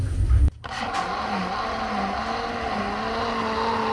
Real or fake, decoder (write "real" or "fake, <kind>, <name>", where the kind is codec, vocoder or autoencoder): real